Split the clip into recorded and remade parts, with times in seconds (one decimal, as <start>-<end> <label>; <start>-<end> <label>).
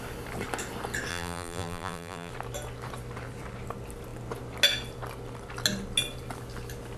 0.0-1.1 recorded; 1.1-2.3 remade; 2.3-7.0 recorded